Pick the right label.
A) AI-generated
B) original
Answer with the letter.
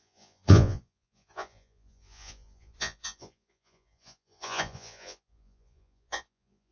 A